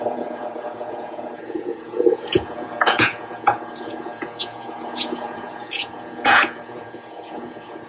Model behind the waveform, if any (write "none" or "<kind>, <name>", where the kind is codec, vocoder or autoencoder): vocoder, Vocos